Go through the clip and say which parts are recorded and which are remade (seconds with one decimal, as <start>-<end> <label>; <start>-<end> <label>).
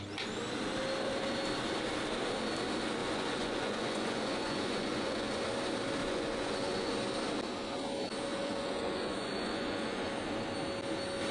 0.0-3.0 recorded; 3.0-5.4 remade; 5.4-6.0 recorded; 6.0-6.9 remade; 6.9-8.3 recorded; 8.3-10.1 remade; 10.1-11.3 recorded